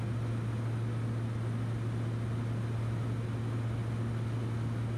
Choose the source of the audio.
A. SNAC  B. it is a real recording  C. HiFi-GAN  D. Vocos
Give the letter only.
B